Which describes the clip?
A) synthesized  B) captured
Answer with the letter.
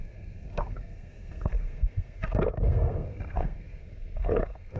A